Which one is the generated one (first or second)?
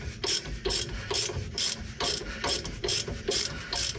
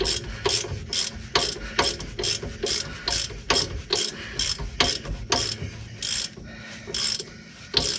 first